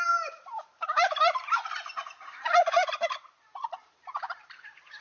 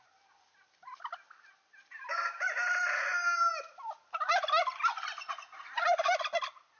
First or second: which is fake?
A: first